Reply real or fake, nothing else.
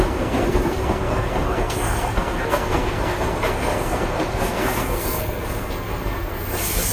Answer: fake